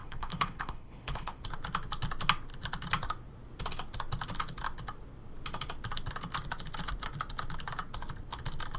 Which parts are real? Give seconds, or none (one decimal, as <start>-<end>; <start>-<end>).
1.4-8.8